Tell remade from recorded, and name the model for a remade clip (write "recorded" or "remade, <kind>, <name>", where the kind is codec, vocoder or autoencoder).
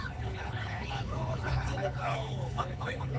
remade, codec, HILCodec